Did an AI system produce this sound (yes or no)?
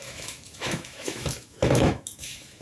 yes